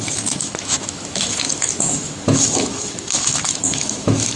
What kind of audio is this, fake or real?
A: fake